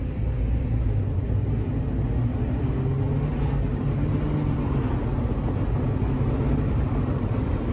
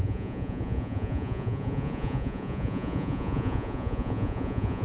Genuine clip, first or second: first